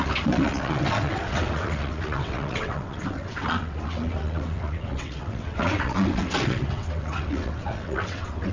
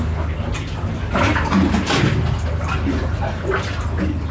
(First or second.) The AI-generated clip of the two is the first